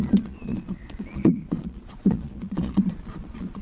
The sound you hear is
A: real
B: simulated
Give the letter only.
B